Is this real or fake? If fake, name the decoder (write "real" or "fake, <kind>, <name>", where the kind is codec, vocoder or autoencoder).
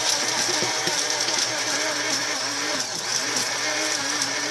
fake, vocoder, BigVGAN v2